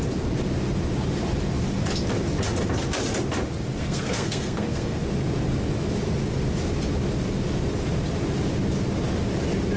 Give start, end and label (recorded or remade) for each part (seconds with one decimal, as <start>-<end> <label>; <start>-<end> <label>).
0.0-3.8 recorded; 3.8-5.0 remade; 5.0-9.8 recorded